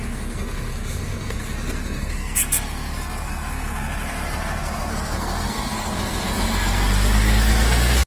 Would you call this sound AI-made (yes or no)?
yes